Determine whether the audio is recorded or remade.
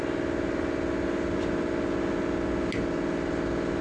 recorded